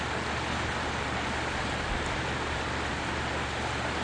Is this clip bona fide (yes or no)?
yes